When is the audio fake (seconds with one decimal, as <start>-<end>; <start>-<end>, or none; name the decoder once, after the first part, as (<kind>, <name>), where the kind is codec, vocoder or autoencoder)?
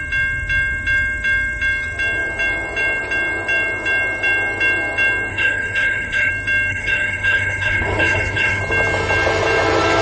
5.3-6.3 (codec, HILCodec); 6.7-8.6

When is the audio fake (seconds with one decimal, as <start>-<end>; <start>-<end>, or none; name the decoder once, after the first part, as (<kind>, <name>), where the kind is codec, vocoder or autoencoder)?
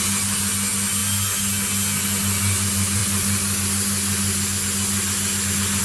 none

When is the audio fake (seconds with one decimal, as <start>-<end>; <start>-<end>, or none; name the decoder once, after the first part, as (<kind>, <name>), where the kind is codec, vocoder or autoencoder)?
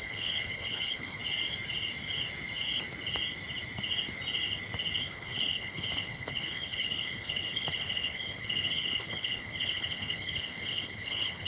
0.0-1.2 (codec, HILCodec); 5.0-11.5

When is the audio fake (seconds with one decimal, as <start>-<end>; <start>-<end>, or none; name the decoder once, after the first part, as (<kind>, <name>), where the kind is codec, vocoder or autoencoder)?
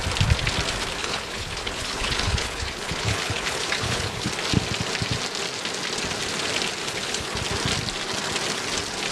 1.0-4.3 (codec, HILCodec); 6.8-7.4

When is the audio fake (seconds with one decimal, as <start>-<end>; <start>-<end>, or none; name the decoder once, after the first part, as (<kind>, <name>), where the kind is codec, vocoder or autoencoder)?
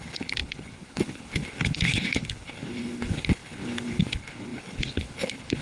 0.0-5.6 (codec, HILCodec)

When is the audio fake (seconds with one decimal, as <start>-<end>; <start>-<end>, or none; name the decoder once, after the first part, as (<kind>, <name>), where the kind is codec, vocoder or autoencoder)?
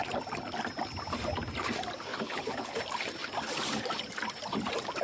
2.1-2.8 (codec, HILCodec)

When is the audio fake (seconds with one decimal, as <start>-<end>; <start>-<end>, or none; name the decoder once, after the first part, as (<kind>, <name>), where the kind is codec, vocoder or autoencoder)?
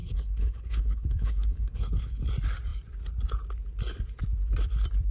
0.0-2.2 (codec, HILCodec)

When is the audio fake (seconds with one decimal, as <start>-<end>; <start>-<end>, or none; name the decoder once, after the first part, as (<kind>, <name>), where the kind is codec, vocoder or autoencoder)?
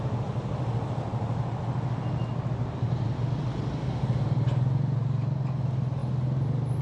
none